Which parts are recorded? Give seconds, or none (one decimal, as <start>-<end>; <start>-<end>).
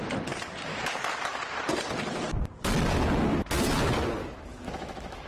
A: 0.0-0.7; 1.4-4.2